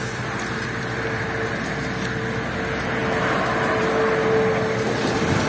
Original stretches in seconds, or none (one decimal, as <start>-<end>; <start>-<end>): 0.0-5.5